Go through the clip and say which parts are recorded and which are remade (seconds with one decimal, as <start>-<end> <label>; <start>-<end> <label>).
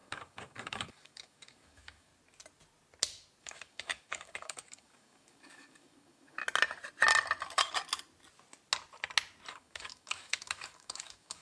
0.0-2.1 remade; 2.1-3.4 recorded; 3.4-6.4 remade; 6.4-9.5 recorded; 9.5-11.4 remade